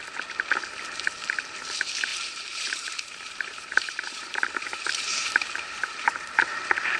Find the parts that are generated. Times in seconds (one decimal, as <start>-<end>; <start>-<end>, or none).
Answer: 2.1-6.3